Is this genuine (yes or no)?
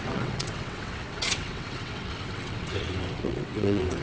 no